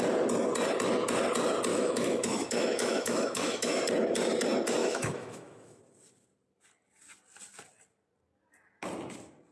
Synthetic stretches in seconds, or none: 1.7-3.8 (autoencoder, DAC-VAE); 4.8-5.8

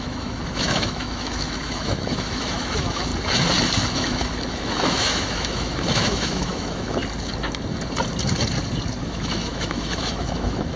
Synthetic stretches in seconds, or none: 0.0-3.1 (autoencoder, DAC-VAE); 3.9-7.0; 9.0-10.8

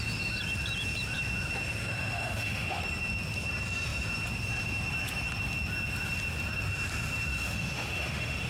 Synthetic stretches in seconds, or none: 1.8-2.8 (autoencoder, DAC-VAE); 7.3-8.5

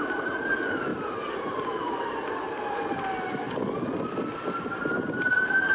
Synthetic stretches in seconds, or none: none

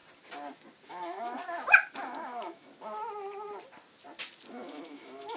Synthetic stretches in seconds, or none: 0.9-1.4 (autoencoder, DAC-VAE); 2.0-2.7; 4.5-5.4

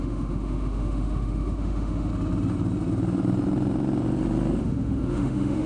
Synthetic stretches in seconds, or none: 0.0-2.1 (autoencoder, DAC-VAE); 4.6-5.7